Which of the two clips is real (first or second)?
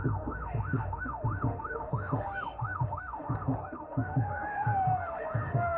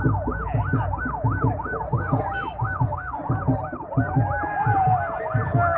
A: second